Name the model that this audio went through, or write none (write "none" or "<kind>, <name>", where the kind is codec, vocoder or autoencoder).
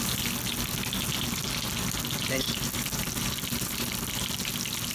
none